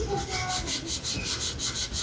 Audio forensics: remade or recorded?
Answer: recorded